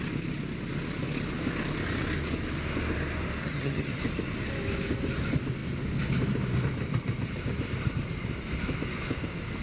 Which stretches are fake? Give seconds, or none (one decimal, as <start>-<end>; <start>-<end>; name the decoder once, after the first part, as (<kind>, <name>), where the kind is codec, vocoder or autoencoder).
3.4-4.0 (vocoder, HiFi-GAN)